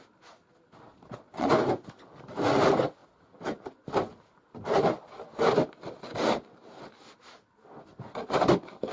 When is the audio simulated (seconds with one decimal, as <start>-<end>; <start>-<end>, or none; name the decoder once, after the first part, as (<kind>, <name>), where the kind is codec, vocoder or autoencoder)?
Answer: 0.9-1.5 (vocoder, Vocos)